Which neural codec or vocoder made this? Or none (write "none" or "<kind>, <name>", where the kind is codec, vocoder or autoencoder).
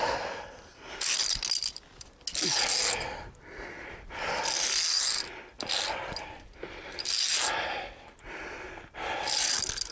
none